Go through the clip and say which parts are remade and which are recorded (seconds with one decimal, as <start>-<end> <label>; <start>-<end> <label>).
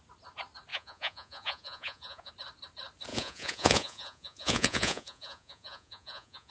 0.0-0.7 recorded; 0.7-2.3 remade; 2.3-3.1 recorded; 3.1-6.5 remade